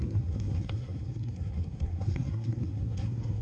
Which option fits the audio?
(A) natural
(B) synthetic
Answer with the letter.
B